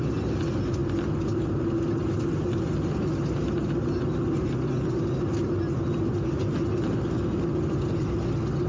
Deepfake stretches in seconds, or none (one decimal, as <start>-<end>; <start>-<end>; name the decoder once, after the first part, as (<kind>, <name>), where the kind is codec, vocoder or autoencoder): none